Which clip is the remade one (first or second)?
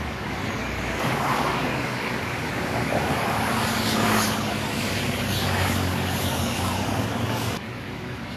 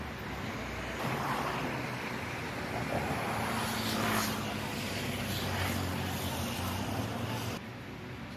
first